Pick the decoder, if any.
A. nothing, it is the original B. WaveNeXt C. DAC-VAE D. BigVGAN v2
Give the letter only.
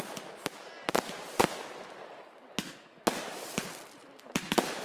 A